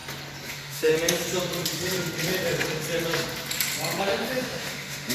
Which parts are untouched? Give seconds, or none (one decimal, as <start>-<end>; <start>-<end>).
0.0-0.5; 0.9-4.0